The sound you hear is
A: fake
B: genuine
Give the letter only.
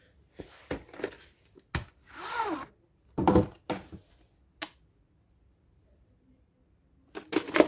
B